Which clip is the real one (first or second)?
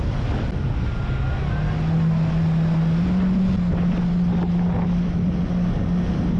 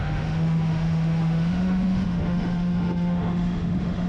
first